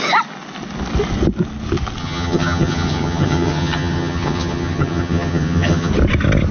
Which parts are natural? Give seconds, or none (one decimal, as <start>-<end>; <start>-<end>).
0.0-2.0; 5.9-6.5